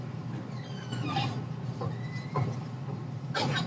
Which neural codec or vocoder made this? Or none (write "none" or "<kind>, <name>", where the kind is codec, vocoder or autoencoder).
none